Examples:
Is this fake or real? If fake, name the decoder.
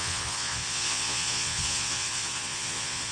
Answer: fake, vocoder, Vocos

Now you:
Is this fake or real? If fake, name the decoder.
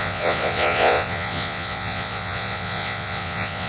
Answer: fake, vocoder, Vocos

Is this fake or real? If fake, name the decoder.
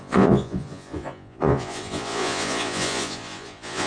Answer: fake, vocoder, Vocos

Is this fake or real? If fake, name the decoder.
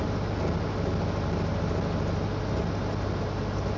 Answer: real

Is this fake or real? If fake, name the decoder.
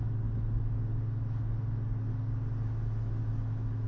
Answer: real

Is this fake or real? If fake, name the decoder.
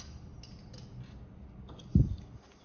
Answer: real